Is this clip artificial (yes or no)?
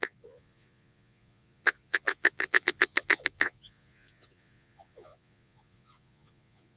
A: yes